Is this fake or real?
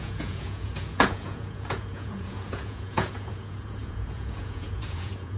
fake